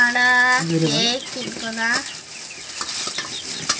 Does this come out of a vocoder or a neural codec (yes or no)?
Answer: no